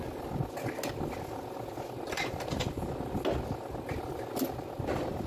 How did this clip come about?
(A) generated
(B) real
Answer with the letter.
B